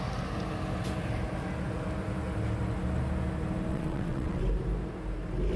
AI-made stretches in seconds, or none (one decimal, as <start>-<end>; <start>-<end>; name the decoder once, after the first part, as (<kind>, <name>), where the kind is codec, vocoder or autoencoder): 3.7-4.4 (vocoder, WaveNeXt)